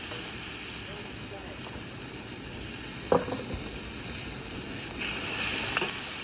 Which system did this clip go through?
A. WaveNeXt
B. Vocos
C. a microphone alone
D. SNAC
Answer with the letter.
C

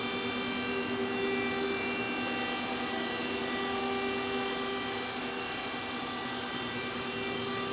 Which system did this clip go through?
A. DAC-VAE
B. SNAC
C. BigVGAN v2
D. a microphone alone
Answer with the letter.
D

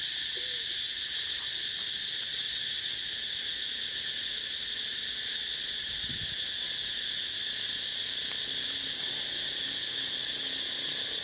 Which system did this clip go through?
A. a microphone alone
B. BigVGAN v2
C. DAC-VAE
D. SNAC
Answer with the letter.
A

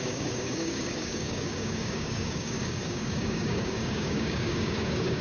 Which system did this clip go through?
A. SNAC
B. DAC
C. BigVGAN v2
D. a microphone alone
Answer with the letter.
B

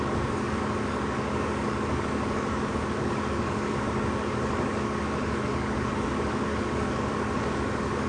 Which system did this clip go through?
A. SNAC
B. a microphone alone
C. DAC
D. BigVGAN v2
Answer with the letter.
C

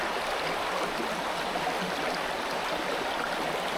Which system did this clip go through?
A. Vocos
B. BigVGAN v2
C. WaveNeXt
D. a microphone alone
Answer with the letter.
D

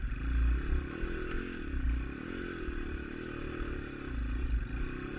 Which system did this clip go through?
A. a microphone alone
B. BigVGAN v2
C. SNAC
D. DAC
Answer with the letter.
A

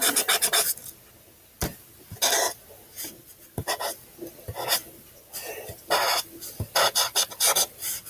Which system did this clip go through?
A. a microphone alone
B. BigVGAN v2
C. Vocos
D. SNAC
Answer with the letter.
A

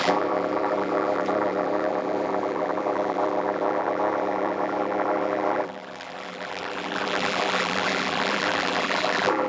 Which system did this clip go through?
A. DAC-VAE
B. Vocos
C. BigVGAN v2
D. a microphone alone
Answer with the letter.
C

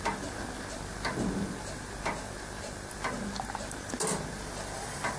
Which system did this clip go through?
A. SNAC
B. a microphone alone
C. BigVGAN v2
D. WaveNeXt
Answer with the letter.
B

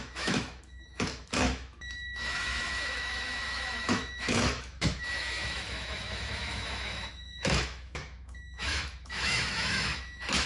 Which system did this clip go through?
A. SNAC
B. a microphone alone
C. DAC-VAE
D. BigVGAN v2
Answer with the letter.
C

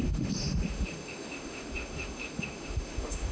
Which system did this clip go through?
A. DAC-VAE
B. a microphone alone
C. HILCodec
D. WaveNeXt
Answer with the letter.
A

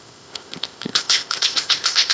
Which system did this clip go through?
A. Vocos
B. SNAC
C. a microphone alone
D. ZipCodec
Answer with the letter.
D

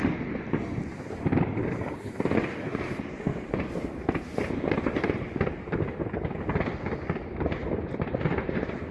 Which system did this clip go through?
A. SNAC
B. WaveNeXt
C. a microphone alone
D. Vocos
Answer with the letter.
C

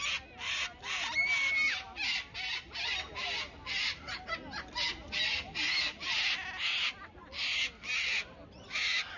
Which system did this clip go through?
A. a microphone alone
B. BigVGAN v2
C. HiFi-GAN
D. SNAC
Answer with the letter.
A